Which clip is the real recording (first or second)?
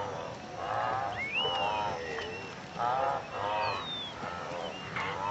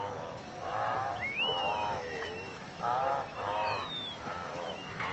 first